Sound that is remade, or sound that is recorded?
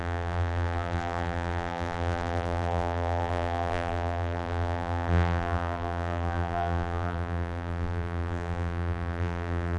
remade